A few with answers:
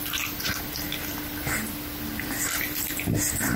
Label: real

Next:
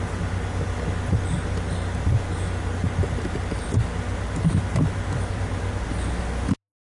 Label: real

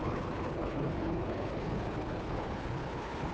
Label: fake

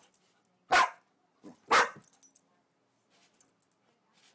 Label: real